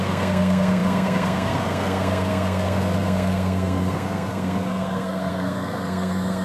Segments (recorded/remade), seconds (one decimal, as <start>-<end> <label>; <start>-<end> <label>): 0.0-6.4 remade